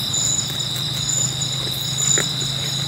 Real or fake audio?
real